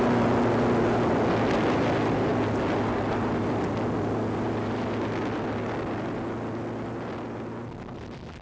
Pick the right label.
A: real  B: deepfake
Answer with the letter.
A